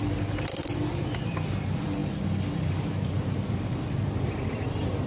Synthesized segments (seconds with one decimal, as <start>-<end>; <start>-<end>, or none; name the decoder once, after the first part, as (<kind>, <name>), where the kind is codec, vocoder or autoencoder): 0.0-5.1 (vocoder, BigVGAN v2)